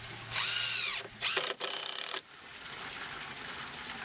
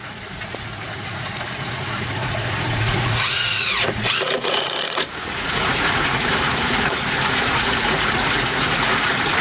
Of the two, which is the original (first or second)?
first